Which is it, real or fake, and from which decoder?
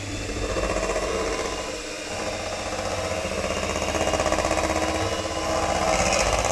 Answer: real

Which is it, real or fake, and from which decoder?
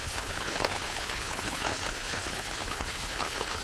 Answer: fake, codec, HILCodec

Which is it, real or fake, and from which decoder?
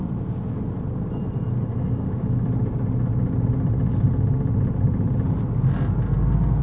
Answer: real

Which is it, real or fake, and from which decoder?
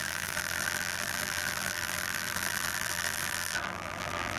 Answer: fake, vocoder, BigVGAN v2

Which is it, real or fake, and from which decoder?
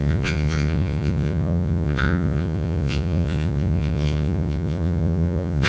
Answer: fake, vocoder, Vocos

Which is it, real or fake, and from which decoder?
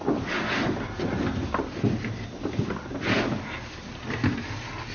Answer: real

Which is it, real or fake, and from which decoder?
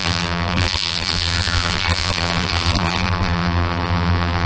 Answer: fake, vocoder, BigVGAN v2